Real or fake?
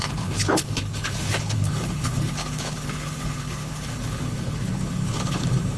fake